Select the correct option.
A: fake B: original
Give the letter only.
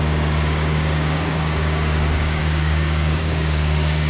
A